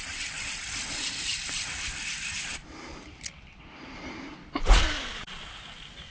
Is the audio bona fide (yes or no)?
yes